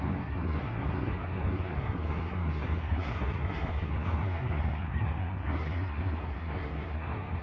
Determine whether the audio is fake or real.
fake